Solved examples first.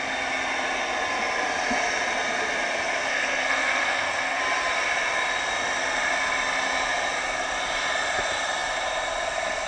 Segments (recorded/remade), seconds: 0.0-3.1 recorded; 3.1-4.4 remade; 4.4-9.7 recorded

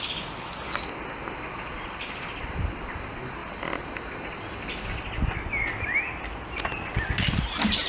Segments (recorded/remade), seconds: 0.0-7.9 recorded

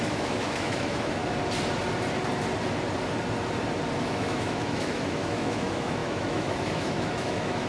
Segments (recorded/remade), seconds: 0.0-1.2 remade; 1.2-4.0 recorded; 4.0-7.7 remade

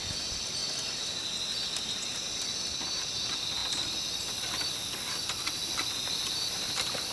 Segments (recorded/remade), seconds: 0.0-0.6 remade; 0.6-3.1 recorded; 3.1-7.1 remade